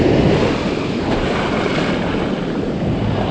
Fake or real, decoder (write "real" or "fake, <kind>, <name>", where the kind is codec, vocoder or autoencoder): real